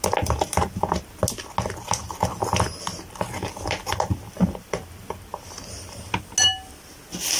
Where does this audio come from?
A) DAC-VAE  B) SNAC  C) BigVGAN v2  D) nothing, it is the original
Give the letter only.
D